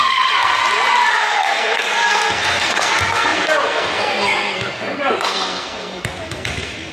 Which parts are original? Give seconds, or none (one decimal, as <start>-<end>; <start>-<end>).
0.6-1.1